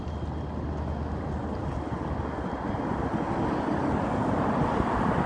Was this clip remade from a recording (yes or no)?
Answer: no